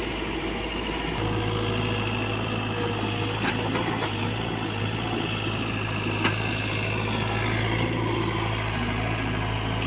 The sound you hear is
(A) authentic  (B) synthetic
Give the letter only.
A